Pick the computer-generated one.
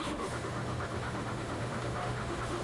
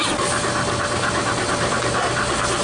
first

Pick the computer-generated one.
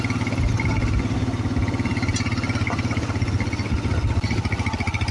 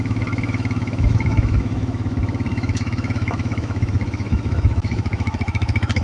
second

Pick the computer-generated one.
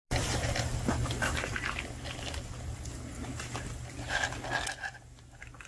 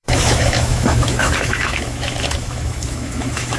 second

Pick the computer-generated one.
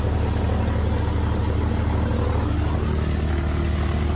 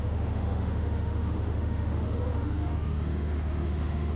second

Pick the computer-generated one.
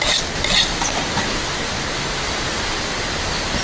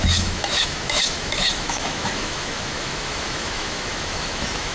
second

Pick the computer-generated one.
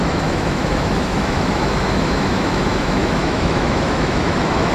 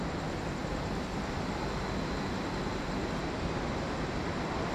first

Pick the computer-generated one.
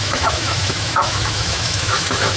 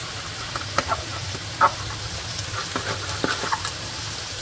first